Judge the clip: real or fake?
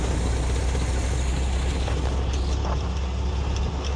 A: real